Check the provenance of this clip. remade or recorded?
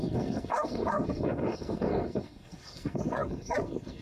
remade